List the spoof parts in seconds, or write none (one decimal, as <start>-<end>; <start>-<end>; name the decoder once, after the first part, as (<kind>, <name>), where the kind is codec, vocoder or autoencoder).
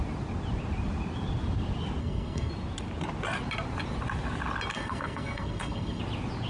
2.0-2.5 (codec, SNAC); 4.7-6.0